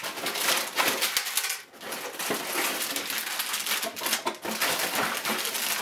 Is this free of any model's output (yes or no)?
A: yes